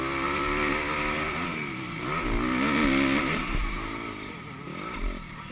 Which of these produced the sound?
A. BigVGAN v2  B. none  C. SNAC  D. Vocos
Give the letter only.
B